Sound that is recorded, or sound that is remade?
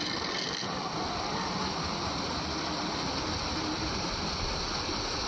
recorded